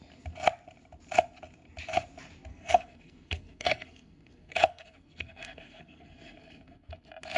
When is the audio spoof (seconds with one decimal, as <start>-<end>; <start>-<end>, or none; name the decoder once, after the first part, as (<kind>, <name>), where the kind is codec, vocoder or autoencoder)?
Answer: 2.5-6.9 (codec, SNAC)